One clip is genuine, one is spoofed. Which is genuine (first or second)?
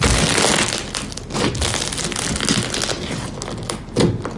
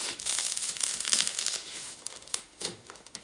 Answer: first